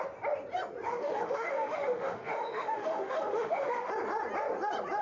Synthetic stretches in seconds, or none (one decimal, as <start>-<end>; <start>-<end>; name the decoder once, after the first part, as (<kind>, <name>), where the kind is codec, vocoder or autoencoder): 0.9-3.9 (autoencoder, DAC-VAE)